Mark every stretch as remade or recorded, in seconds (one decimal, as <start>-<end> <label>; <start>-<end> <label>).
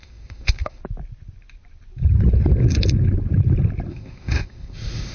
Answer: 0.0-0.8 remade; 0.8-3.9 recorded; 3.9-5.1 remade